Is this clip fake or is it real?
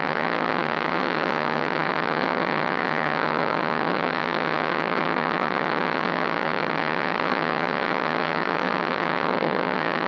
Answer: fake